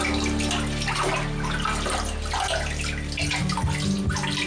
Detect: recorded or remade recorded